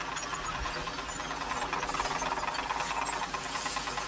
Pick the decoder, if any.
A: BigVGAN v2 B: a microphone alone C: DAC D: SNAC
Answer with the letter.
B